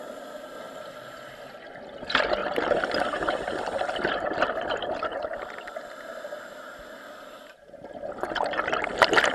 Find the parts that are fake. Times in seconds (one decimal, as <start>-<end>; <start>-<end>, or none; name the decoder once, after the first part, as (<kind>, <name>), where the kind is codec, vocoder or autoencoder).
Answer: 2.4-7.1 (vocoder, BigVGAN v2)